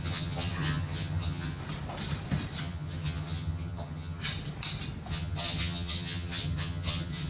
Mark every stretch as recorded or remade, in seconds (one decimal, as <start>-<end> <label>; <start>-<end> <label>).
0.0-1.6 remade; 1.6-2.6 recorded; 2.6-4.2 remade; 4.2-5.1 recorded; 5.1-7.3 remade